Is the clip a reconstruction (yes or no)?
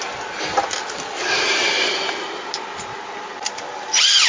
no